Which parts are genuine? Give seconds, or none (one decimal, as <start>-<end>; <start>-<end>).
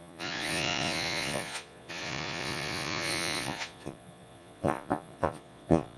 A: none